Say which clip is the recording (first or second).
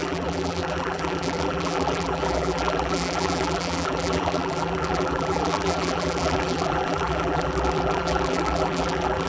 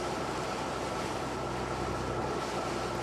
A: second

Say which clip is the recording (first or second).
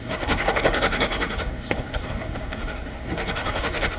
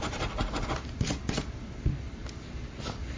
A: second